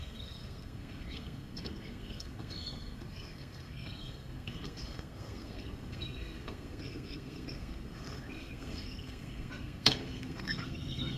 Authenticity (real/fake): fake